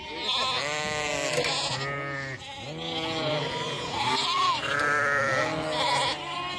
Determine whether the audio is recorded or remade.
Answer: recorded